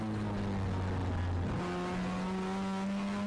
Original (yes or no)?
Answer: yes